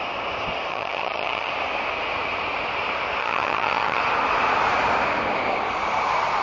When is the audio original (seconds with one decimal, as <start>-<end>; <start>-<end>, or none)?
0.0-0.7; 1.5-3.2; 4.0-6.4